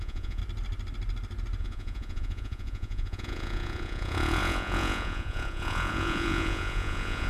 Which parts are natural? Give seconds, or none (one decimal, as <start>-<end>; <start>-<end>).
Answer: 0.4-1.6